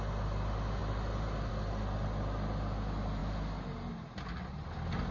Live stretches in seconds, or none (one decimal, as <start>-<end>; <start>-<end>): 0.0-5.1